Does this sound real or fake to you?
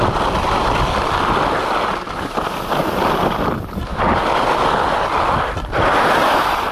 real